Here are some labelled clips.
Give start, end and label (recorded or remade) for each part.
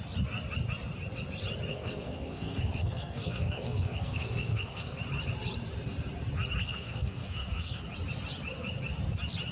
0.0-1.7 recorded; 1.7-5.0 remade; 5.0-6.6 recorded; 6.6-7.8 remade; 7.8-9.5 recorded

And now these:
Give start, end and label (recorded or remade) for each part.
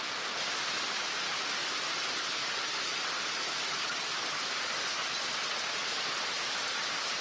0.0-1.6 recorded; 1.6-2.6 remade; 2.6-7.2 recorded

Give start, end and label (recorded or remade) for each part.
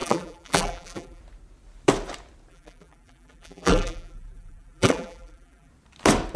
0.0-1.2 remade; 1.2-2.5 recorded; 2.5-5.7 remade; 5.7-6.4 recorded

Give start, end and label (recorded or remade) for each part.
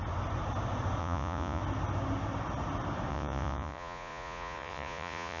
0.0-1.0 recorded; 1.0-1.6 remade; 1.6-3.1 recorded; 3.1-5.4 remade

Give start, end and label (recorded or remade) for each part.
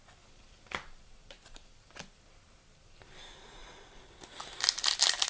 0.0-5.3 recorded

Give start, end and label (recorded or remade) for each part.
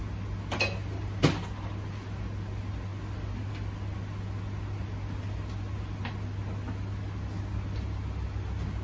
0.0-8.8 recorded